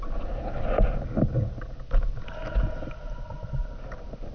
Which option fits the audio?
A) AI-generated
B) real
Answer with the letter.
B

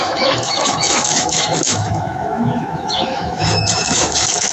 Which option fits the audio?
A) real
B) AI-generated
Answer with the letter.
B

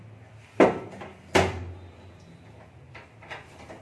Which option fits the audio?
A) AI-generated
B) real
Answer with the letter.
B